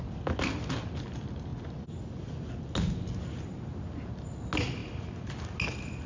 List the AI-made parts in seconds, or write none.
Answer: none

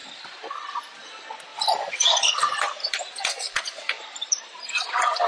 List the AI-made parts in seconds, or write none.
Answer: 1.5-4.6 (vocoder, BigVGAN v2)

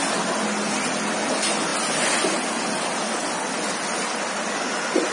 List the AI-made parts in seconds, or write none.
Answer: none